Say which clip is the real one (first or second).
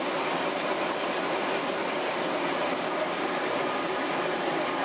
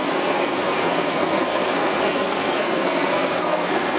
first